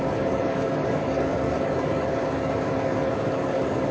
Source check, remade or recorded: remade